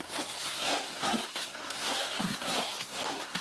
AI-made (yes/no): yes